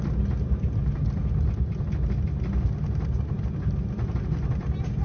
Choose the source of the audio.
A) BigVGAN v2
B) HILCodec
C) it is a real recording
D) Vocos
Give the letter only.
C